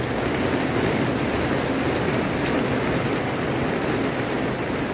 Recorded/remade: recorded